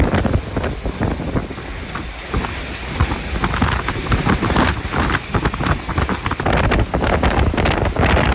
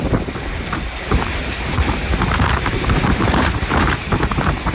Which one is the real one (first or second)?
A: first